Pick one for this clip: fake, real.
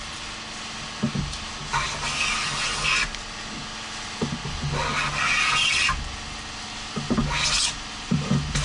real